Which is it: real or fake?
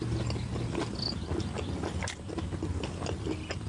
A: real